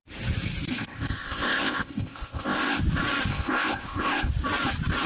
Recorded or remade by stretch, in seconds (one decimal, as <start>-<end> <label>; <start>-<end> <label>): 0.0-0.7 recorded; 0.7-2.8 remade; 2.8-3.3 recorded; 3.3-4.3 remade; 4.3-5.1 recorded